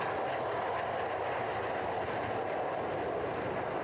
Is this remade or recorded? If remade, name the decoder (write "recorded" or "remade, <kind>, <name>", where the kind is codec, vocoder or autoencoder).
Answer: recorded